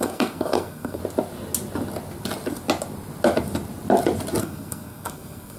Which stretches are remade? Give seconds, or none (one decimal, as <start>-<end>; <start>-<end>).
0.0-1.0; 4.4-5.6